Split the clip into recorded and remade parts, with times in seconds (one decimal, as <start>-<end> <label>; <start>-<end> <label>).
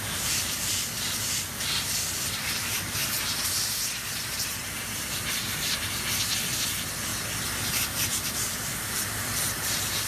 0.0-3.0 remade; 3.0-3.8 recorded; 3.8-7.1 remade; 7.1-7.7 recorded; 7.7-10.1 remade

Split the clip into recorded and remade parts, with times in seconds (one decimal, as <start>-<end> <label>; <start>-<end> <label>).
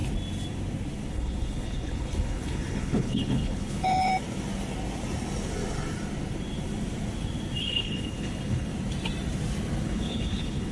0.0-1.1 recorded; 1.1-4.1 remade; 4.1-7.6 recorded; 7.6-8.7 remade; 8.7-9.8 recorded; 9.8-10.7 remade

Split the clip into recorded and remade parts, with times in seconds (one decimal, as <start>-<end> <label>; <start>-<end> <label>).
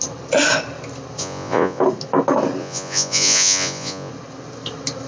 0.0-1.2 recorded; 1.2-1.8 remade; 1.8-2.6 recorded; 2.6-4.1 remade; 4.1-5.1 recorded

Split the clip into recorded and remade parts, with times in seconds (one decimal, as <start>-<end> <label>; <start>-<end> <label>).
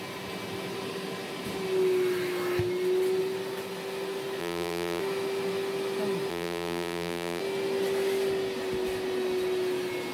0.0-4.4 recorded; 4.4-5.0 remade; 5.0-6.3 recorded; 6.3-7.4 remade; 7.4-10.1 recorded